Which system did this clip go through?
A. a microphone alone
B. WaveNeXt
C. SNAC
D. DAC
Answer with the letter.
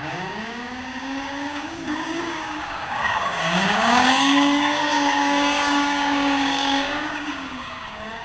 D